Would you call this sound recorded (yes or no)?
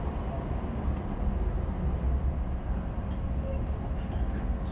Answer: yes